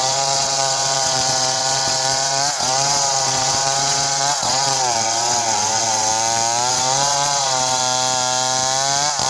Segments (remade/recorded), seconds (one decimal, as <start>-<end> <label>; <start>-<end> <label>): 0.0-6.1 remade; 6.1-6.7 recorded; 6.7-7.8 remade; 7.8-9.3 recorded